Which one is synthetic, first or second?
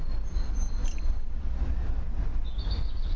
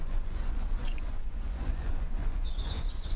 second